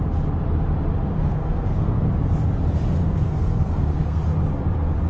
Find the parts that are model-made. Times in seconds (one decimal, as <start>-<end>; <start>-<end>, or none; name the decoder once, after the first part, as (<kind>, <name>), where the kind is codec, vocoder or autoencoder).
1.1-2.1 (codec, SNAC); 3.0-4.2

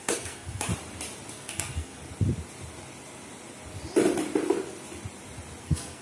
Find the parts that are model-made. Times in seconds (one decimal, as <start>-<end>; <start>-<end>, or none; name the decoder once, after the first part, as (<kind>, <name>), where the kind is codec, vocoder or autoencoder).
0.0-0.7 (codec, SNAC); 1.3-2.0; 5.6-6.0

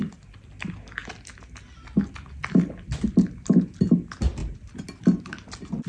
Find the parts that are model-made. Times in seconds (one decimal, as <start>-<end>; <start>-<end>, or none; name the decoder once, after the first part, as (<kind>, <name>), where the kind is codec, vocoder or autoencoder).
none

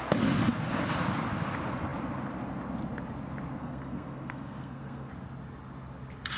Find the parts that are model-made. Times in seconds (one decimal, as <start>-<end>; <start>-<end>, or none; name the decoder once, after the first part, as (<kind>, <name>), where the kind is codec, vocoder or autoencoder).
3.6-5.1 (codec, SNAC)

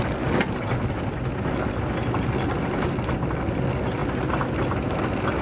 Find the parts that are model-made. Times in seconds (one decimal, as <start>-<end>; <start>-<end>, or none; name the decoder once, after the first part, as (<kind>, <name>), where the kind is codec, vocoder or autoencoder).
none

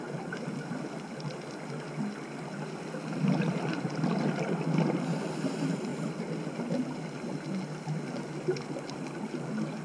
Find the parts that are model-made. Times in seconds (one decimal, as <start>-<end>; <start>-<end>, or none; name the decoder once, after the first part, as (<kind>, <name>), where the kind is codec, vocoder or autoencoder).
none

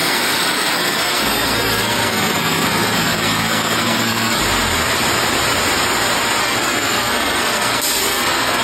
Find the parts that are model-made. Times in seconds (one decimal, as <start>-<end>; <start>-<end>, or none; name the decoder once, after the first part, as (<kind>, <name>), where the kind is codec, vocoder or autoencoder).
0.0-4.4 (codec, SNAC); 6.4-8.6